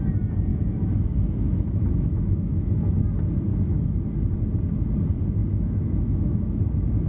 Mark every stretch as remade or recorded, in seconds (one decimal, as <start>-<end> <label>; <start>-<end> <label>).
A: 0.0-0.5 recorded; 0.5-3.0 remade; 3.0-5.4 recorded; 5.4-6.6 remade; 6.6-7.1 recorded